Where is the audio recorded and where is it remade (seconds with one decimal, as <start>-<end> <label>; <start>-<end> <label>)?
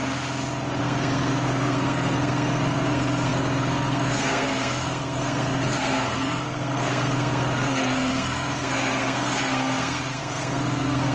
0.0-0.8 recorded; 0.8-11.1 remade